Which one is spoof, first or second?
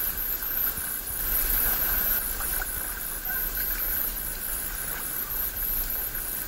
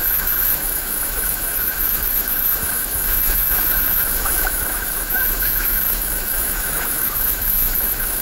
second